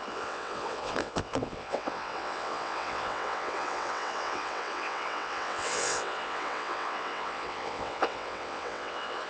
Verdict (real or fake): fake